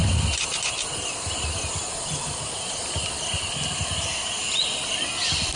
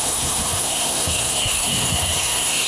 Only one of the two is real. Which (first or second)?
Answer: first